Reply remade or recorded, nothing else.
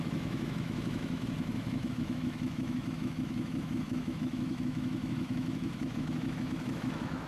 remade